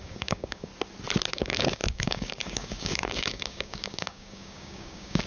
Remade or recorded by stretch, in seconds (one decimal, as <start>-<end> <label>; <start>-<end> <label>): 0.0-0.7 remade; 0.7-1.3 recorded; 1.3-5.3 remade